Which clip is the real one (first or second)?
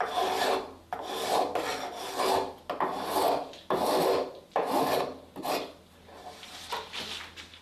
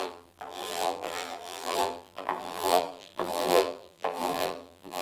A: first